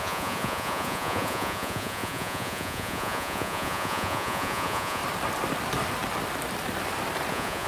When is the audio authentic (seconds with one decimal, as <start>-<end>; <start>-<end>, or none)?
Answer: 5.0-7.3